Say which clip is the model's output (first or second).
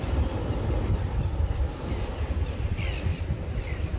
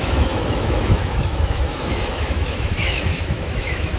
second